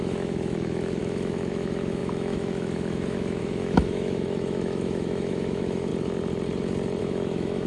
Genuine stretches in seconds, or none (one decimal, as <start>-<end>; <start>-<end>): 5.9-7.0